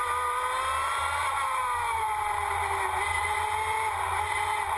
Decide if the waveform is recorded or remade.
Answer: recorded